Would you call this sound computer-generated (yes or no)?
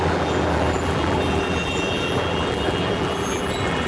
yes